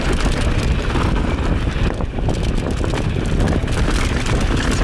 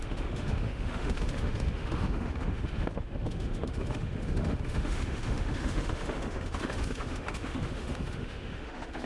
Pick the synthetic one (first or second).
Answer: second